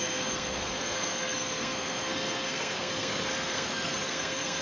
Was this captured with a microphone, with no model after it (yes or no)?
no